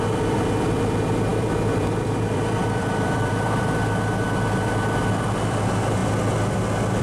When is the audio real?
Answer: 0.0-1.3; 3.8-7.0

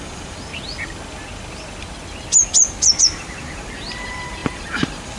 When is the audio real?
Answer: 0.5-3.0

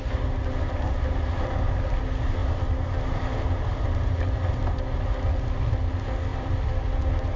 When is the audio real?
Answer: 0.0-6.3; 7.0-7.4

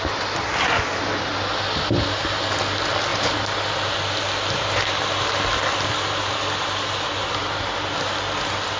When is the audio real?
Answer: 0.0-3.1; 4.0-8.8

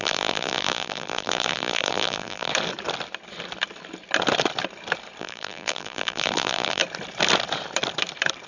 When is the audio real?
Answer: 2.5-5.2; 6.8-8.5

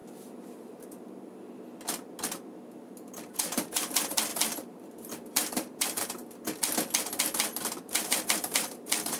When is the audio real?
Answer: 0.0-2.7; 6.2-7.8

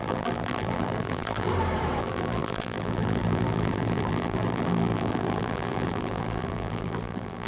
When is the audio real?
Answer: 1.5-2.0

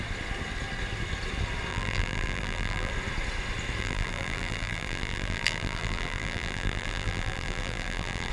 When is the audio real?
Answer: 0.0-1.7; 2.9-3.8